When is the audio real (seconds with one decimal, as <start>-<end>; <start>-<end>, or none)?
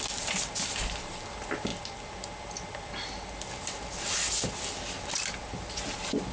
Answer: 0.0-6.3